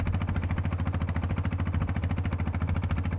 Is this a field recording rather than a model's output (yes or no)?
yes